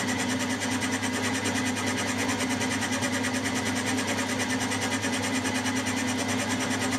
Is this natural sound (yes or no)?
yes